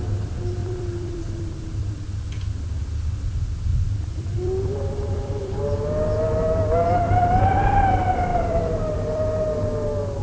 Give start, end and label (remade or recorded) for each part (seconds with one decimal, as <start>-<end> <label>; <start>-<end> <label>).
0.0-0.6 recorded; 0.6-1.8 remade; 1.8-3.7 recorded; 3.7-5.6 remade; 5.6-8.3 recorded; 8.3-9.2 remade; 9.2-10.2 recorded